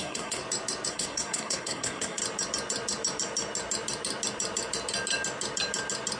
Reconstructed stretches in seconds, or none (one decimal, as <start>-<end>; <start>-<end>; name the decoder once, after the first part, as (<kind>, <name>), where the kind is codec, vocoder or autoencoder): 0.0-0.4 (codec, SNAC); 0.9-2.2